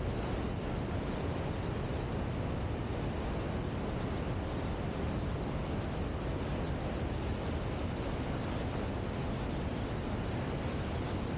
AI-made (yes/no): no